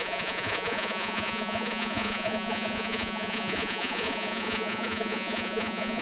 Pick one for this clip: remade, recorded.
remade